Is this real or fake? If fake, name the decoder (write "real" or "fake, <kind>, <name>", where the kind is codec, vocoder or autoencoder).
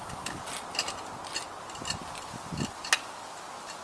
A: real